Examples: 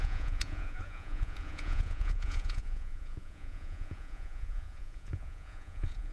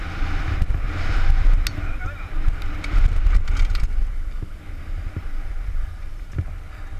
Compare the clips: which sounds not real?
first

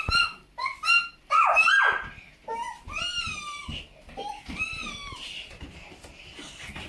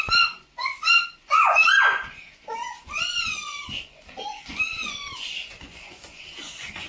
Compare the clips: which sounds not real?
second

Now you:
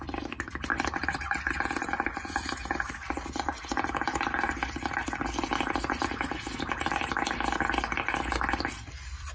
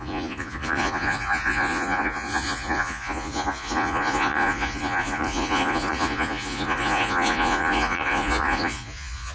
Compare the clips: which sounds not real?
second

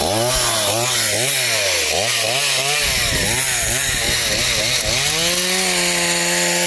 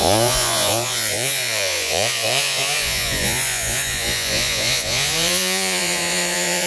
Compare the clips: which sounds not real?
second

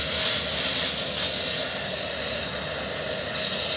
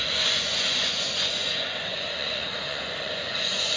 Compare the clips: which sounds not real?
second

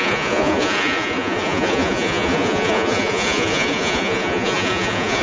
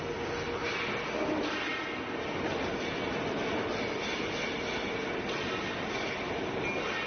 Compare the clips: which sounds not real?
first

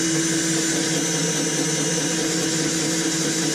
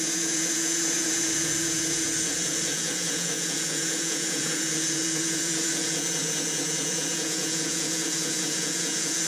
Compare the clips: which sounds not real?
second